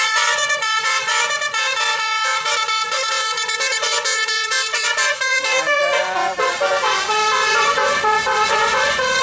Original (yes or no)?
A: no